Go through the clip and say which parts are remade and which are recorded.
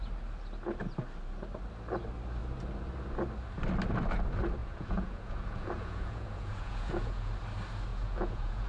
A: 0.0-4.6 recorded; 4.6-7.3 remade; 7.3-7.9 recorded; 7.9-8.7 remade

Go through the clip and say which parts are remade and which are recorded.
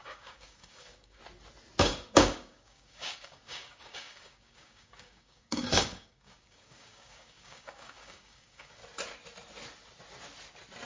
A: 0.0-1.2 remade; 1.2-1.8 recorded; 1.8-8.8 remade; 8.8-10.9 recorded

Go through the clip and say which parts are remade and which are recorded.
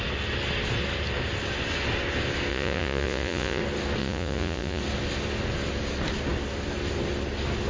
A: 0.0-2.5 recorded; 2.5-3.6 remade; 3.6-4.0 recorded; 4.0-4.8 remade; 4.8-7.7 recorded